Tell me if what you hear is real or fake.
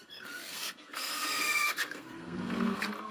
fake